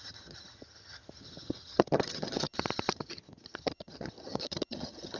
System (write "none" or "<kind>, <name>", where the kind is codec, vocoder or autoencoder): vocoder, HiFi-GAN